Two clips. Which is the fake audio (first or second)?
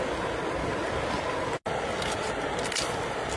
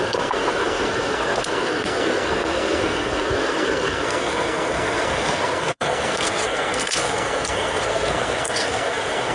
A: second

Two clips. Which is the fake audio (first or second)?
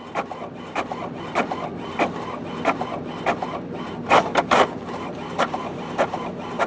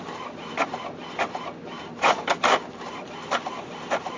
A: second